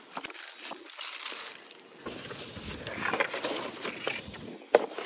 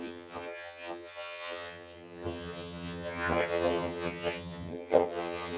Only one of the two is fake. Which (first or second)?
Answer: second